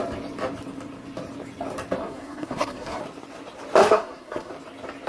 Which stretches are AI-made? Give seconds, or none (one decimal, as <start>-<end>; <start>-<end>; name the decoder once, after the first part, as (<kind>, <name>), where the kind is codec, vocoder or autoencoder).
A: 2.0-3.0 (codec, SNAC); 3.8-4.5

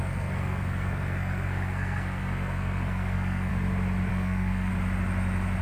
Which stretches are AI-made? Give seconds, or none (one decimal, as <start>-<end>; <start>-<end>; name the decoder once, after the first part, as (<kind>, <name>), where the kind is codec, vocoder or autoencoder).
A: 0.0-3.5 (codec, SNAC); 4.1-4.7

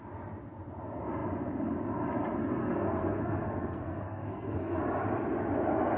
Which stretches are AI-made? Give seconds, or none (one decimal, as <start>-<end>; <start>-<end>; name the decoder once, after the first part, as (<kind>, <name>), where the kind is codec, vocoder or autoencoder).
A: 2.6-4.8 (codec, SNAC)

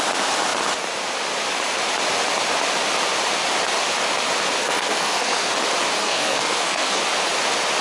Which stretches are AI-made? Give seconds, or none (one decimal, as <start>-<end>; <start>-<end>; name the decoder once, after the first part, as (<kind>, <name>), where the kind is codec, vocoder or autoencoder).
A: 4.6-5.5 (codec, SNAC); 6.0-7.0